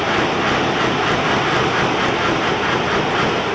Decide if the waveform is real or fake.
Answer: real